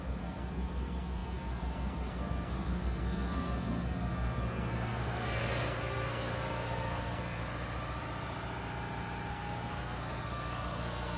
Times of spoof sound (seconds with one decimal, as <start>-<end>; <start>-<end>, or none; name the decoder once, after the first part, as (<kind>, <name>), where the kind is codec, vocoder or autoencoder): 0.0-7.4 (codec, SNAC); 9.3-11.2